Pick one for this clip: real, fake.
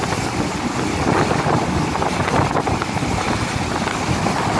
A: real